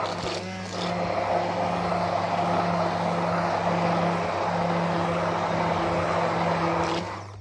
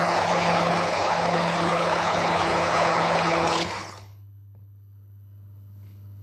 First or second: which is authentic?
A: first